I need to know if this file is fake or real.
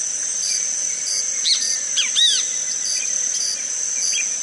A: real